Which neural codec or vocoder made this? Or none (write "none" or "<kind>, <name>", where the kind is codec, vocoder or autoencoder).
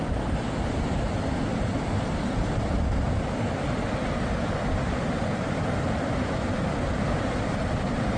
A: none